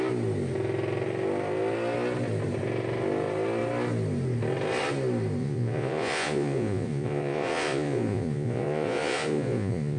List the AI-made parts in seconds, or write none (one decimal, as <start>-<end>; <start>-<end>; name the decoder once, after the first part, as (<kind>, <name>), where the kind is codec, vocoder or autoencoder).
5.4-10.0 (vocoder, Vocos)